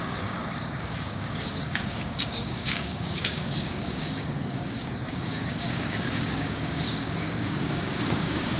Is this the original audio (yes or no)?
no